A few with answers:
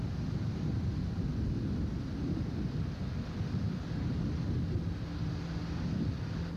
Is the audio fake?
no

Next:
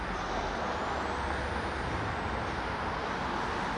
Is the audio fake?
no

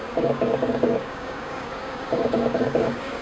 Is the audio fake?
yes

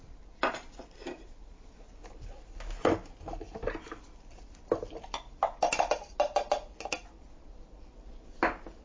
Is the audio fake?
no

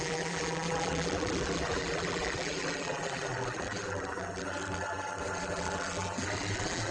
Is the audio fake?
yes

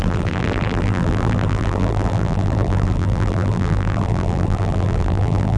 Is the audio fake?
yes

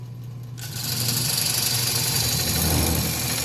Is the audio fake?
no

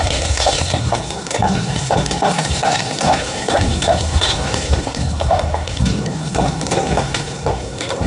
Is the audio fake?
yes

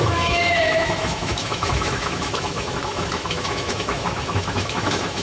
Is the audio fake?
yes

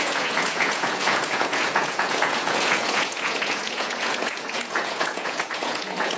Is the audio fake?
yes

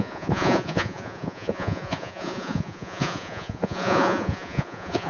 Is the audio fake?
yes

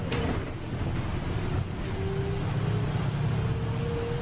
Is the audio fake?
no